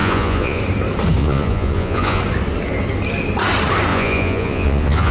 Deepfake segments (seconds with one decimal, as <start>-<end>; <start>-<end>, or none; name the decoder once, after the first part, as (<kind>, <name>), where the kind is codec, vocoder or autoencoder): 0.0-0.6 (vocoder, Vocos); 1.2-2.2; 3.9-5.1

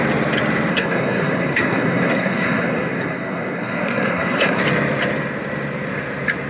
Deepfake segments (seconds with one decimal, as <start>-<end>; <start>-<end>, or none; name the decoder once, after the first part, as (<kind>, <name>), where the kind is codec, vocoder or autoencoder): 0.7-4.6 (codec, SNAC)

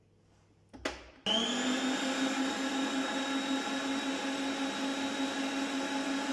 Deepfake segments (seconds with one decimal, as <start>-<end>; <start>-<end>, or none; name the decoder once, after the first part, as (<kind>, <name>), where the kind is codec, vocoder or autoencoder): none

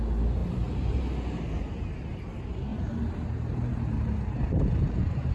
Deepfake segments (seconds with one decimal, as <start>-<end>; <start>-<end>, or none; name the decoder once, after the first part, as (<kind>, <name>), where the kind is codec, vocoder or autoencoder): 0.4-1.0 (vocoder, BigVGAN v2); 2.7-5.3